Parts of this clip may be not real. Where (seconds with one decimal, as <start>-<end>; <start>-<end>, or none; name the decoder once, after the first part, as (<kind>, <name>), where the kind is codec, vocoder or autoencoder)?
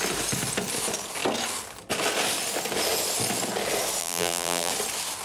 4.0-4.7 (vocoder, BigVGAN v2)